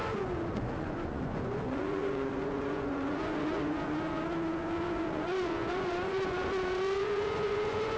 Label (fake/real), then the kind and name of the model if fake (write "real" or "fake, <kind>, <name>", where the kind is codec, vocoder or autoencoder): fake, vocoder, Vocos